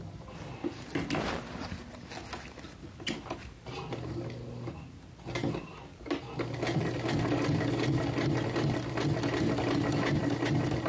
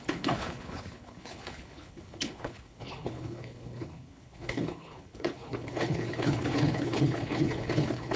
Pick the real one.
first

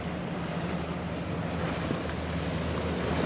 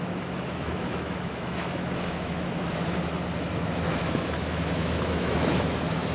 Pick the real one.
first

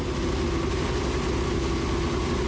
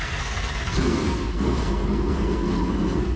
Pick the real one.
first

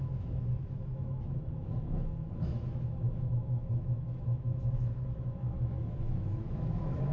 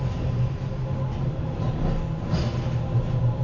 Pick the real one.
second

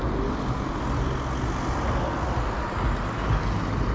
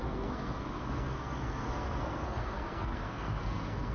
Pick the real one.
first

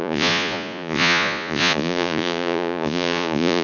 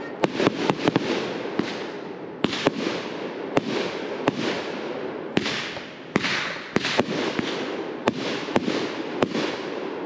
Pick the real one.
second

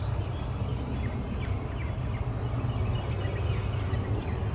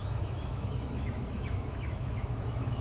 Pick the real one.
first